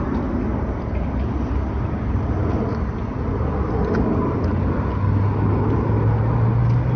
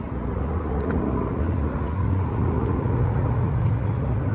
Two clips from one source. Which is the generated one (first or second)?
second